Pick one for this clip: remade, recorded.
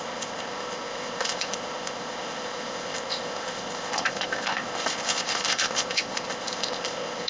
remade